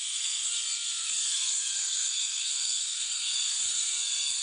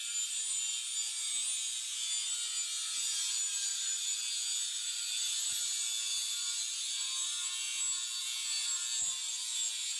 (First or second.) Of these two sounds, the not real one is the first